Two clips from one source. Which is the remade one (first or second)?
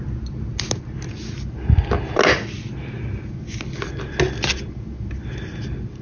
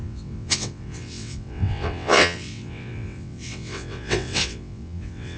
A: second